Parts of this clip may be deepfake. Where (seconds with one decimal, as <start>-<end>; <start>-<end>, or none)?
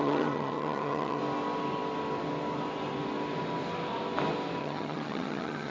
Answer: 0.0-1.2; 4.6-5.7